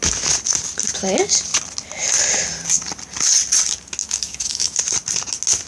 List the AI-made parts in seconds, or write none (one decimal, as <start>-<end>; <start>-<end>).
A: 4.0-4.8